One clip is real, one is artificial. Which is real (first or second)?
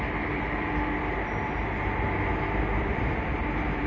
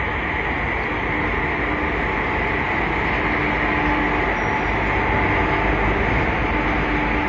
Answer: second